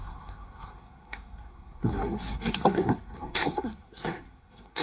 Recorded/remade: remade